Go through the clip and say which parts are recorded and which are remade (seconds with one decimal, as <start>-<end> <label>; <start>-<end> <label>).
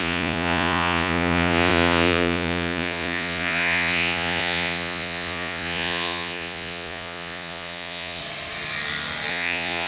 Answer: 0.0-8.2 remade; 8.2-9.3 recorded; 9.3-9.9 remade